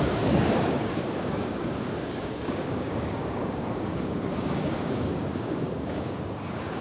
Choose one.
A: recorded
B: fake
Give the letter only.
B